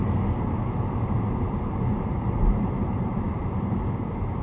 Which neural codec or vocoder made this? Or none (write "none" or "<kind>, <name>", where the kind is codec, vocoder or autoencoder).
vocoder, BigVGAN v2